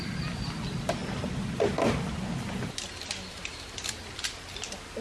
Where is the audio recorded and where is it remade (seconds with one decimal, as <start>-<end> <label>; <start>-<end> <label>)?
0.0-5.0 recorded